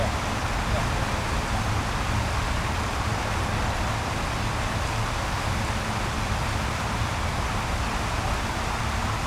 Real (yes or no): yes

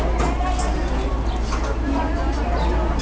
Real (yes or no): yes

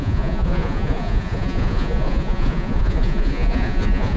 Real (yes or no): no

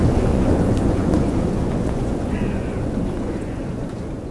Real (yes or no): no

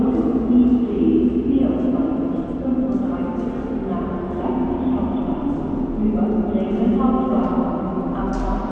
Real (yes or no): yes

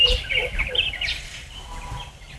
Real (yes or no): yes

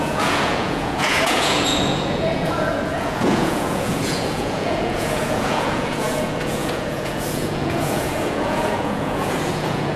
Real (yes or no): no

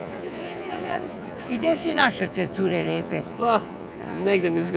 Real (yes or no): no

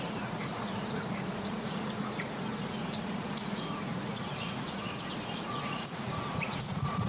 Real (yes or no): no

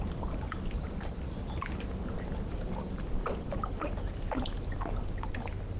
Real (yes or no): yes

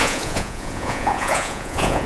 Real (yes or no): no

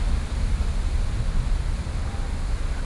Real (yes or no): yes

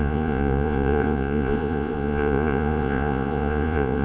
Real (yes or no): no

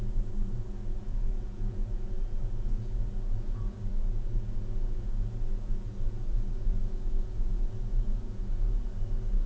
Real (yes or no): no